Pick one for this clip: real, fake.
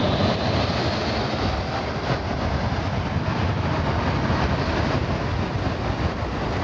real